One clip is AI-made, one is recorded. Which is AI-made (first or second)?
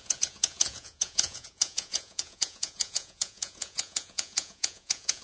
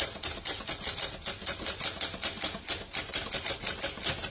first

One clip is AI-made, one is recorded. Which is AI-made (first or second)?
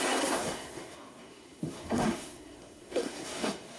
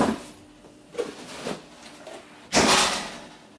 first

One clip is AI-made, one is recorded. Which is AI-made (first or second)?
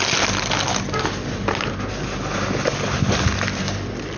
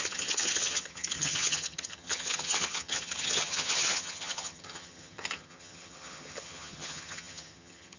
second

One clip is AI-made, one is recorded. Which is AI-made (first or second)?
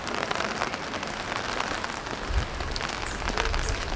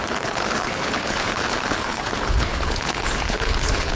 second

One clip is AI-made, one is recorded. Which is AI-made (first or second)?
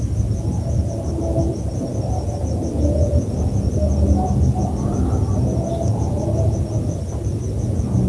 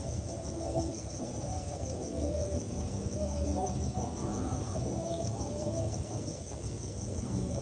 second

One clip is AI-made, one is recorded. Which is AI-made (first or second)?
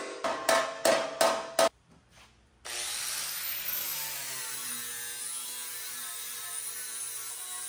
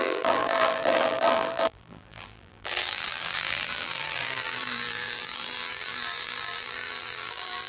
second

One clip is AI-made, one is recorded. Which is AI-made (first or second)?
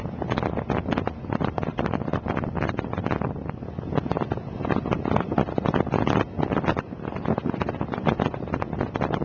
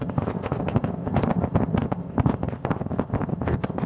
second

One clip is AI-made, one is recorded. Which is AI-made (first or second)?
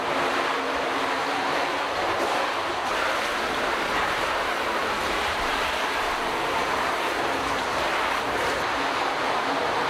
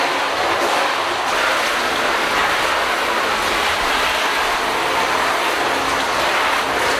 first